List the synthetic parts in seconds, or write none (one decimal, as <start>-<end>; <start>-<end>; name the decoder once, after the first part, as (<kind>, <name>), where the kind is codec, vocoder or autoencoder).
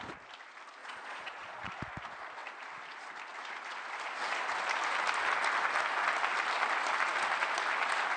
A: 0.8-1.7 (vocoder, Vocos)